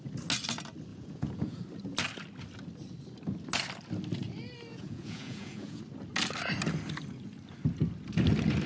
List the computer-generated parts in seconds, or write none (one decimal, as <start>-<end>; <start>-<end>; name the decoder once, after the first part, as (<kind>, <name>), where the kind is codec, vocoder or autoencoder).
0.9-1.6 (vocoder, Vocos); 4.7-5.8